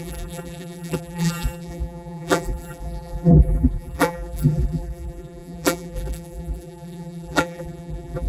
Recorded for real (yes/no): no